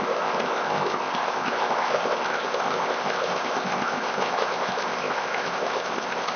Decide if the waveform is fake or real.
fake